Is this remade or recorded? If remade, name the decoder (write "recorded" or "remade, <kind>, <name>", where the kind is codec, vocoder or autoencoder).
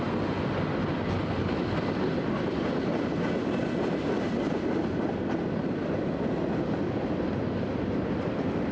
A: recorded